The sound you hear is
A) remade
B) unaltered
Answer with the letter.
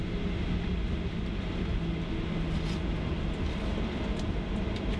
B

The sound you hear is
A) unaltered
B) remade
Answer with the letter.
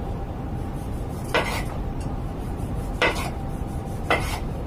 B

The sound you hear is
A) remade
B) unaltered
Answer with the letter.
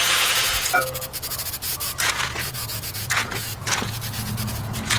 A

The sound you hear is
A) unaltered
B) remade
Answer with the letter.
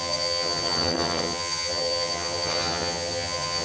B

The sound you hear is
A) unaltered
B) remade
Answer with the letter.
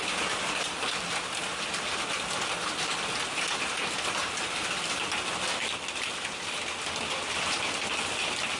A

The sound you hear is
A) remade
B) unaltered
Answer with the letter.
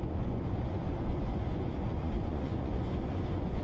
A